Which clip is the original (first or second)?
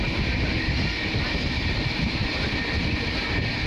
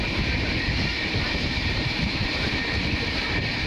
first